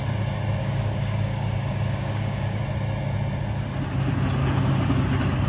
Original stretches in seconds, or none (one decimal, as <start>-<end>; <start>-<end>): 0.0-0.6; 2.6-4.4; 5.0-5.5